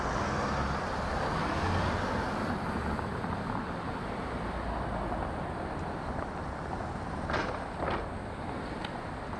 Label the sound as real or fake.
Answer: real